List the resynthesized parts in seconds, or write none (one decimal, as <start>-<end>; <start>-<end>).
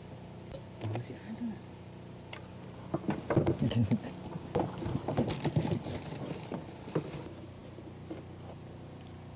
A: none